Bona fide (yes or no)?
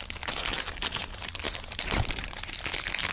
yes